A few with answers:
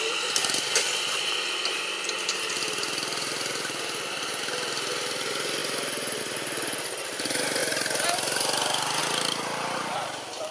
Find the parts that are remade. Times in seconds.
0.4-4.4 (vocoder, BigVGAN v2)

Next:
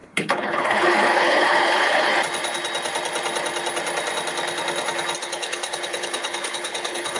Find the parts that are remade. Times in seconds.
0.0-2.1 (codec, HILCodec); 5.2-7.2

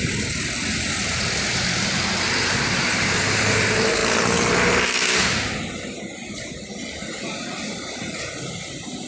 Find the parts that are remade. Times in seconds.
0.0-4.0 (vocoder, BigVGAN v2)

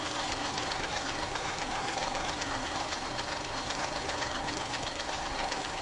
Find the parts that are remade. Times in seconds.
0.0-5.8 (codec, SNAC)

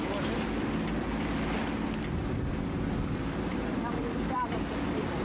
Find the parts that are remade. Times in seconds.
none

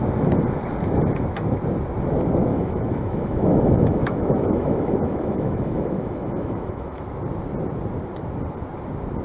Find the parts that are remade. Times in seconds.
2.5-7.0 (autoencoder, DAC-VAE)